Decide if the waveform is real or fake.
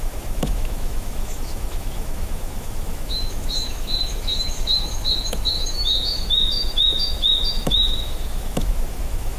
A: fake